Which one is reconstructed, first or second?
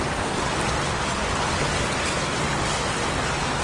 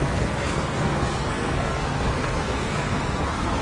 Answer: second